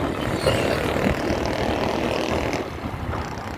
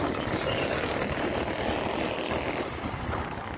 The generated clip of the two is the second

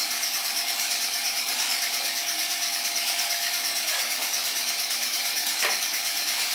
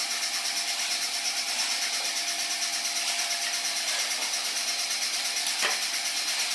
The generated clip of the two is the first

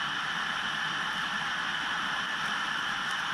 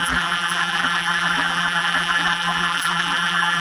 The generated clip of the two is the second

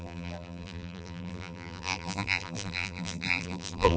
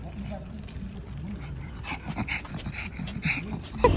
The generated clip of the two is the first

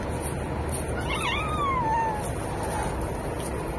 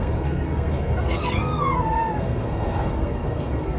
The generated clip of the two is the second